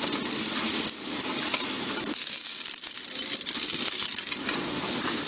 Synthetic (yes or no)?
yes